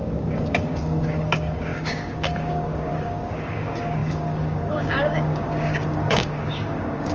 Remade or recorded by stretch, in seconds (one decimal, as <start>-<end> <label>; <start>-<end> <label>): 0.0-7.1 remade